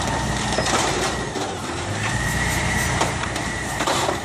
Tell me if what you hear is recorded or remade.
remade